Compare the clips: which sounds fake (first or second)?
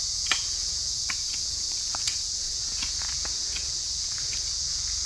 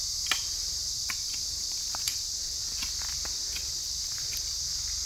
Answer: first